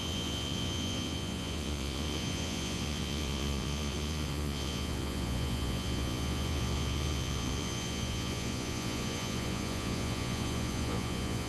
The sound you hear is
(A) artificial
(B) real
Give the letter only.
A